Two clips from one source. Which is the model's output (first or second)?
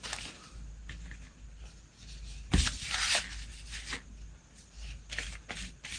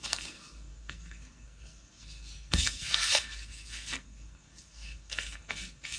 second